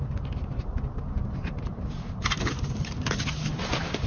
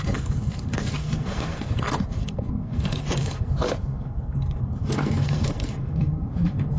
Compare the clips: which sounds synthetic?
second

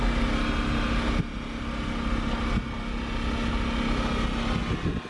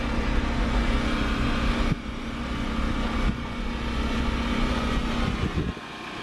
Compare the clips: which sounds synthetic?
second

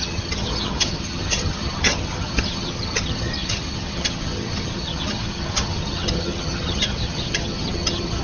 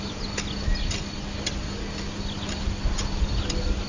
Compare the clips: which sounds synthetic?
first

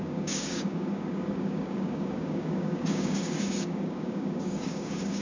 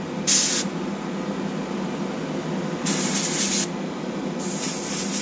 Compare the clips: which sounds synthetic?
first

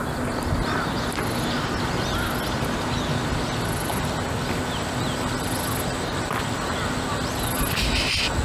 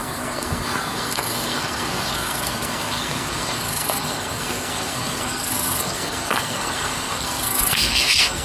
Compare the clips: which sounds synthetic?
second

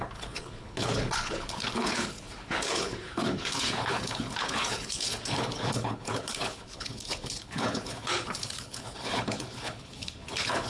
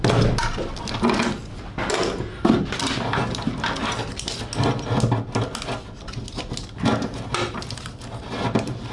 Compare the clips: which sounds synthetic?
first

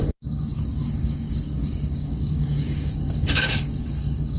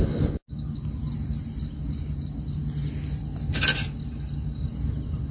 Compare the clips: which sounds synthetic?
first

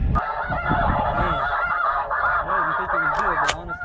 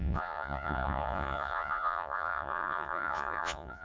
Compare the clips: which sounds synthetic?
second